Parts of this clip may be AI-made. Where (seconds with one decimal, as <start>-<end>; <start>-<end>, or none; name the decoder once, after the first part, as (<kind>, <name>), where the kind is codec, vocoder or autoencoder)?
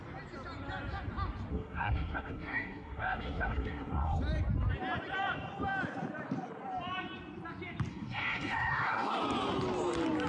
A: 1.5-4.2 (codec, SNAC); 7.9-9.2